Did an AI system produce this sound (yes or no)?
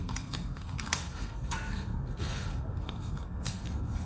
yes